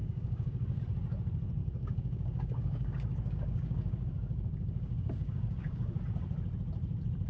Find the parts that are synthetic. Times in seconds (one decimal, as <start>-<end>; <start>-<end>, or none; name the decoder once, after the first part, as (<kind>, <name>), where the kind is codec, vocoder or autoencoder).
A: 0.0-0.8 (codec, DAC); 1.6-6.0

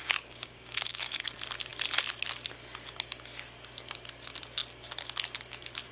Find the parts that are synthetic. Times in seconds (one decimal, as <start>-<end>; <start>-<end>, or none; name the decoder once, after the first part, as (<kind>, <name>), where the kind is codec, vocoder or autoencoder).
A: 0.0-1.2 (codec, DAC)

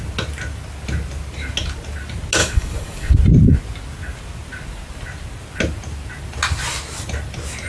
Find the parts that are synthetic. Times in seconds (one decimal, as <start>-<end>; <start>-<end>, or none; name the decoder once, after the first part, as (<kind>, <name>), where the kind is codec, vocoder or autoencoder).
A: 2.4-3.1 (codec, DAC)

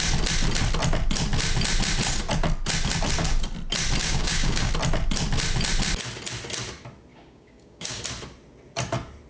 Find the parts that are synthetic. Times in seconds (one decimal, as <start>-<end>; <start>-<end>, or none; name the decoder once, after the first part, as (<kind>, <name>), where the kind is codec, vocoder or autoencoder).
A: 4.0-4.7 (codec, DAC); 7.1-8.0